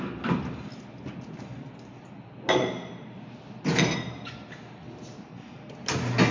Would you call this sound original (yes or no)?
yes